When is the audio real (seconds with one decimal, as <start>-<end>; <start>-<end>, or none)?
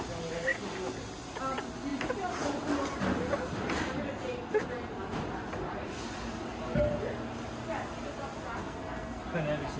0.0-8.6; 9.2-9.8